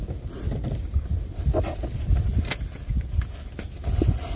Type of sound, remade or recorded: recorded